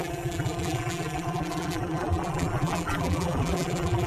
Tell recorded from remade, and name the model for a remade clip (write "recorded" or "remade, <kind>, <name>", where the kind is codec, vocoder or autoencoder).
remade, vocoder, BigVGAN v2